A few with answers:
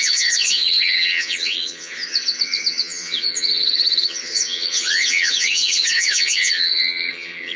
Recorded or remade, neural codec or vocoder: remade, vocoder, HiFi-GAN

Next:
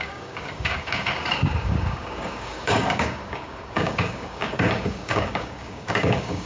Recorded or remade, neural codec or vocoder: remade, codec, DAC